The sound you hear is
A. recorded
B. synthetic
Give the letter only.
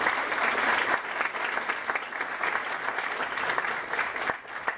A